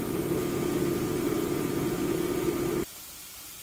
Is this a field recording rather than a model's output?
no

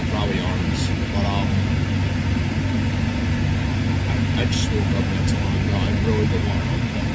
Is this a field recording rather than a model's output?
yes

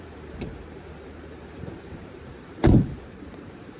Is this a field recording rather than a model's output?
no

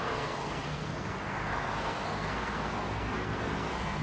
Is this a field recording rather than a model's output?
no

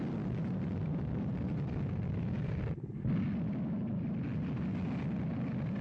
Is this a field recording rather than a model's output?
yes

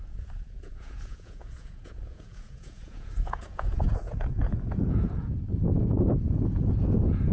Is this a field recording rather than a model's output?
no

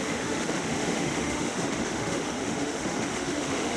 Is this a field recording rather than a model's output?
no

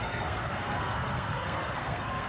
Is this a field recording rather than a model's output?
no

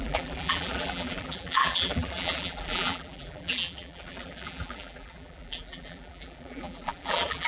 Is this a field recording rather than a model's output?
no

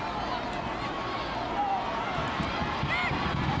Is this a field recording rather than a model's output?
yes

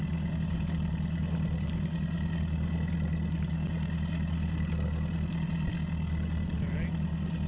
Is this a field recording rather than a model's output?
yes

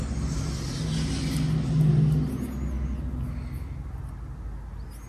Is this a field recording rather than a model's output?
yes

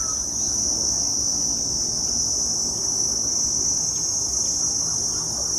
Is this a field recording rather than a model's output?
yes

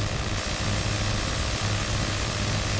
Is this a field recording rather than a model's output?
yes